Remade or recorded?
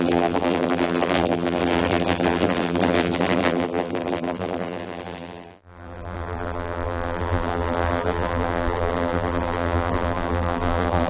remade